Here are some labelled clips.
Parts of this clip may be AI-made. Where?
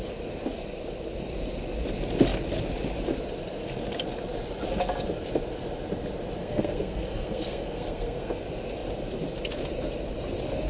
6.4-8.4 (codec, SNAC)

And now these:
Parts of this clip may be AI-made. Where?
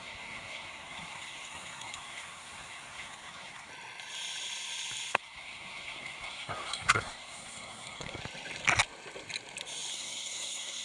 0.0-3.7 (codec, SNAC); 5.1-8.2; 9.9-10.8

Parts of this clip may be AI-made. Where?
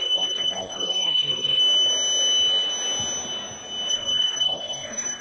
0.0-1.6 (codec, SNAC); 3.9-5.2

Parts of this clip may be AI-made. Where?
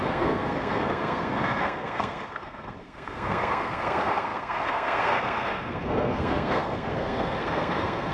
0.0-8.1 (codec, SNAC)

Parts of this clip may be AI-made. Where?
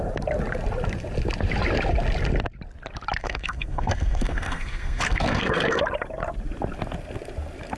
3.2-5.8 (codec, SNAC)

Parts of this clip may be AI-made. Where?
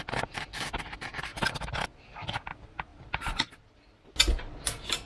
none